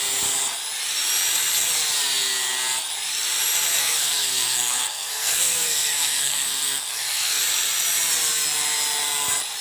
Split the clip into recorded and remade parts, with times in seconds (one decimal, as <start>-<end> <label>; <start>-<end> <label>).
0.0-3.8 recorded; 3.8-7.4 remade; 7.4-9.6 recorded